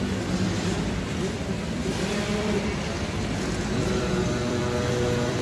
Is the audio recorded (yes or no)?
no